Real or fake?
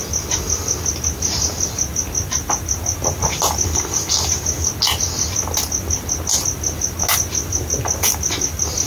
real